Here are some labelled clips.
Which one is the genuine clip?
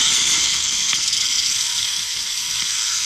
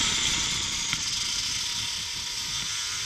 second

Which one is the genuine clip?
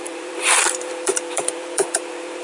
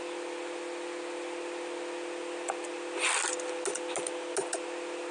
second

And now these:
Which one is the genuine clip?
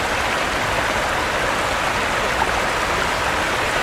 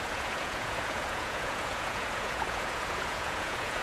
first